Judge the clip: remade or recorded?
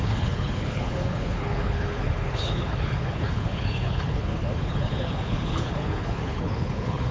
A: remade